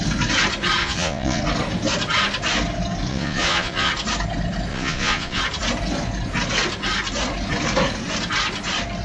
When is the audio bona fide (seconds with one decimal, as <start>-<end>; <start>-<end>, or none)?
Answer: 0.0-0.8; 1.4-3.1; 3.9-4.7; 5.4-9.0

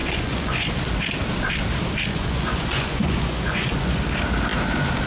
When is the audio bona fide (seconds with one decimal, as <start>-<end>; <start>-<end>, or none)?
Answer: 0.7-2.1; 4.0-5.1

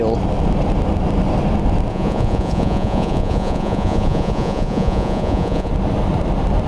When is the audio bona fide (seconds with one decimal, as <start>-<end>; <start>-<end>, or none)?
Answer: 0.0-1.9; 5.7-6.7

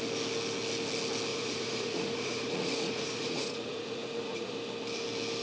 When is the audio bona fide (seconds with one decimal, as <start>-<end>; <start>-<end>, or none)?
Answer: 0.0-1.3; 4.5-5.4